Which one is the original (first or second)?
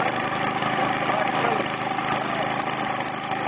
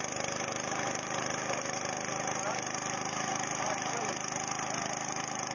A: first